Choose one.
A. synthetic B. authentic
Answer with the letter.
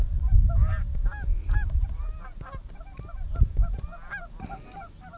B